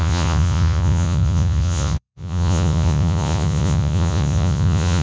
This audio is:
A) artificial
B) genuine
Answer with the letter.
A